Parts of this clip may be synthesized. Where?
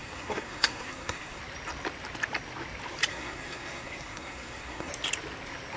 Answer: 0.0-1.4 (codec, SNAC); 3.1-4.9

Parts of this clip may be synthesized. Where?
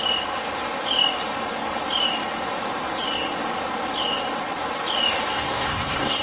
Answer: 5.3-6.2 (codec, SNAC)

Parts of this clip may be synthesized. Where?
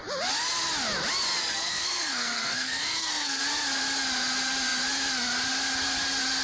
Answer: 1.4-3.4 (codec, SNAC)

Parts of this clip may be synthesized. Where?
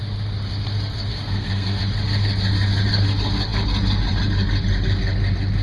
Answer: 1.1-1.8 (codec, SNAC)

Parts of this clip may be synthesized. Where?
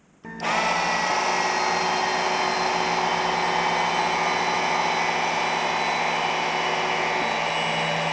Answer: none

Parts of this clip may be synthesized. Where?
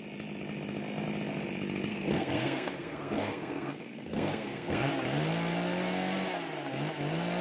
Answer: 1.9-4.9 (codec, SNAC)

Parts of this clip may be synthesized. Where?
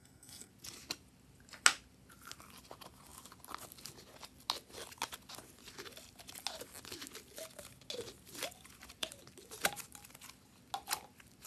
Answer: 0.0-0.5 (codec, SNAC)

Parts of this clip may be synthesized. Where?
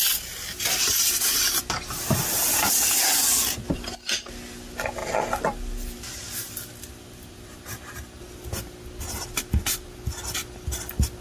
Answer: none